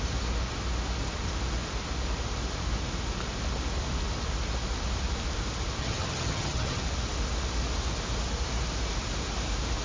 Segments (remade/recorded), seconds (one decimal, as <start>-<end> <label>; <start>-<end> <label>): 0.0-5.8 recorded; 5.8-6.8 remade; 6.8-9.8 recorded